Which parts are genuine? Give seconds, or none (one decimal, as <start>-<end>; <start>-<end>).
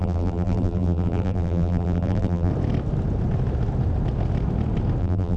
2.5-5.0